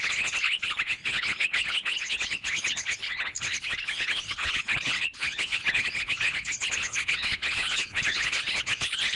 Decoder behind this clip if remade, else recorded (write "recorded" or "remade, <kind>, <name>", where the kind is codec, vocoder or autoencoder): remade, codec, HILCodec